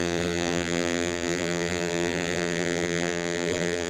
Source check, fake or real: fake